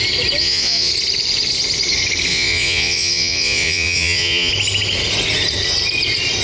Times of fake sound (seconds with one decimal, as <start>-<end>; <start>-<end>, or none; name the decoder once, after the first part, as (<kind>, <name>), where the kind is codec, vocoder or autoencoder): 0.4-0.9 (vocoder, Vocos); 2.3-4.5